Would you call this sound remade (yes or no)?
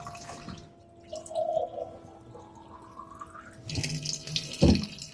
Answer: no